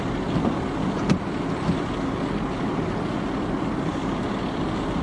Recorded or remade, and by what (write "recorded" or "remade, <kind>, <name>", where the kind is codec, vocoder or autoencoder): recorded